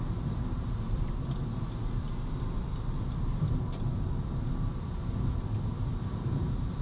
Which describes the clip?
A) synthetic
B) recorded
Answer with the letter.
B